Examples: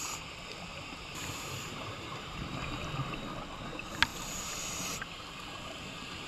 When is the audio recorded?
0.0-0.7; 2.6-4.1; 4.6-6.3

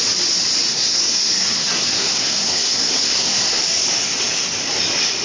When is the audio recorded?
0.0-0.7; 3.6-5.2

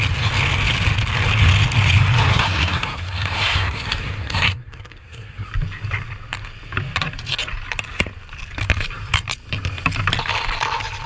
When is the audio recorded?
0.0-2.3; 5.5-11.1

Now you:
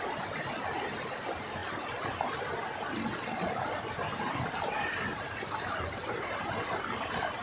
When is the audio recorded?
0.0-7.4